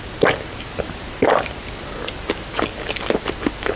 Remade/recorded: recorded